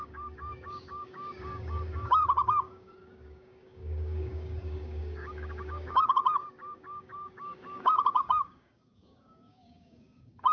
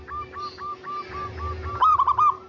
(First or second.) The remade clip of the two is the first